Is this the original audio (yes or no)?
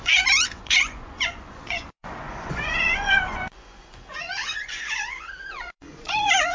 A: no